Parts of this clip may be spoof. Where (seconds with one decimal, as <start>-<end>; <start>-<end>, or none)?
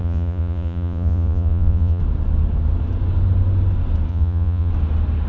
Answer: 0.0-2.0; 4.1-4.7